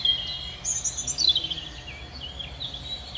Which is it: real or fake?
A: real